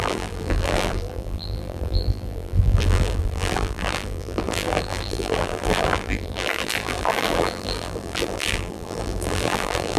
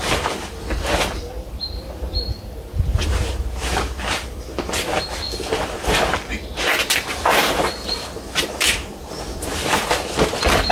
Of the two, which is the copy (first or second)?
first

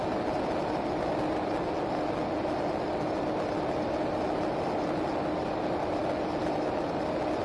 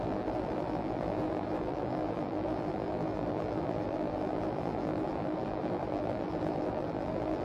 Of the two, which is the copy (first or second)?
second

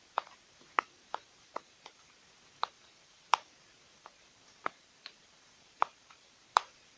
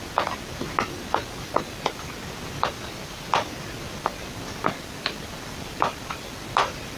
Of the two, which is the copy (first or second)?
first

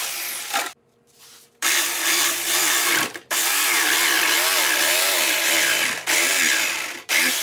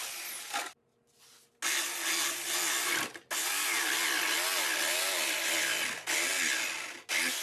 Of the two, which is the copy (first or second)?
first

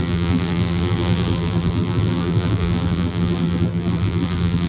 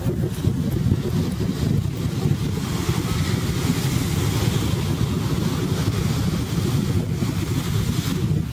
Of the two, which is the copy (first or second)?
first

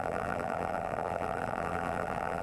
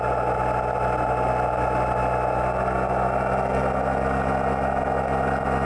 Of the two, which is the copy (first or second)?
first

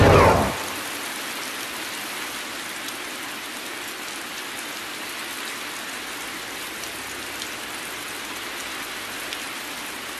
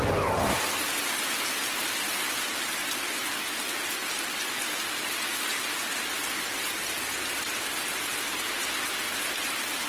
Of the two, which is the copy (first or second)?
second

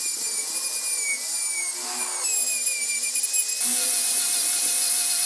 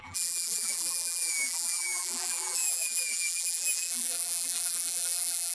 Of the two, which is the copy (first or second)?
second